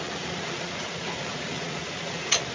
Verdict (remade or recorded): remade